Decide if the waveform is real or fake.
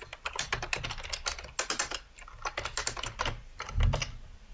real